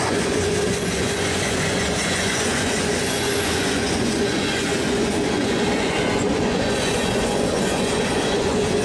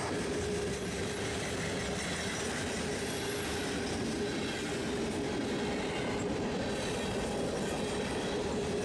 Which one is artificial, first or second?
first